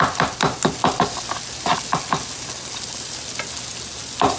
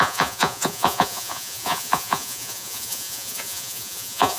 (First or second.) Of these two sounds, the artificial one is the second